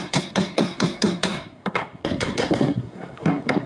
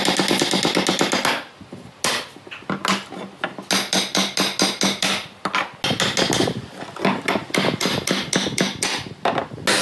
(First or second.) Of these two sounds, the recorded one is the second